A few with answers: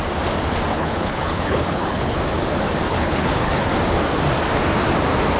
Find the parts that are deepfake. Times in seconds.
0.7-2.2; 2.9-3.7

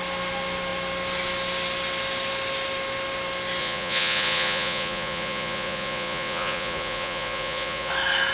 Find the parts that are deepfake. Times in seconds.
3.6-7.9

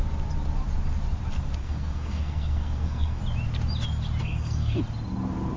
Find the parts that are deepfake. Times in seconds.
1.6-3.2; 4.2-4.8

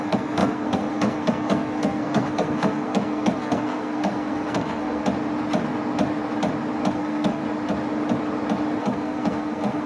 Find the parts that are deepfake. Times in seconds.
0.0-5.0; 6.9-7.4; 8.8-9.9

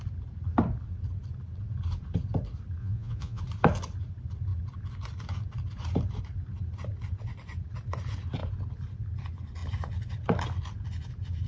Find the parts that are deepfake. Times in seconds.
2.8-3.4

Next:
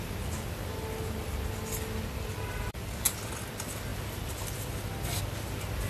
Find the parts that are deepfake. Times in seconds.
none

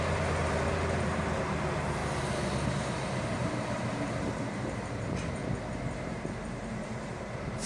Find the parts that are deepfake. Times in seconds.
0.0-2.0; 2.7-5.4; 6.1-7.7